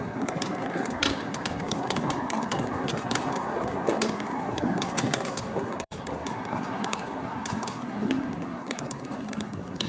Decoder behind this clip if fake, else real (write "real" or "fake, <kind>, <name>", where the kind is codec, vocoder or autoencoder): fake, codec, SNAC